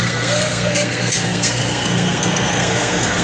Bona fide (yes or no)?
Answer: no